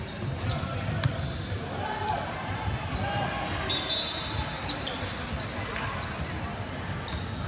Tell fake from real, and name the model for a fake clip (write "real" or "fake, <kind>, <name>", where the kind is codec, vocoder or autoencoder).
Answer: real